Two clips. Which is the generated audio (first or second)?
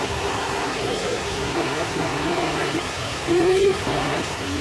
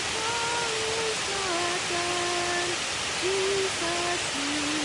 first